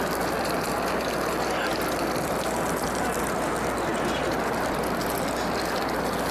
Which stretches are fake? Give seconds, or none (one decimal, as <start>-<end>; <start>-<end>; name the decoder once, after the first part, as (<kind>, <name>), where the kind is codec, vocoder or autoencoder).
3.9-4.5 (vocoder, BigVGAN v2)